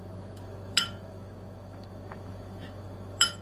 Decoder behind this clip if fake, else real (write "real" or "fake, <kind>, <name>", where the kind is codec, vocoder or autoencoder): fake, autoencoder, DAC-VAE